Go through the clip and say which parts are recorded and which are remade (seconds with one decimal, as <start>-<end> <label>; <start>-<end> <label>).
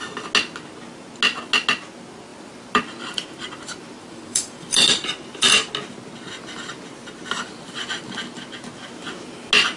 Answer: 0.0-2.3 recorded; 2.3-5.7 remade; 5.7-9.8 recorded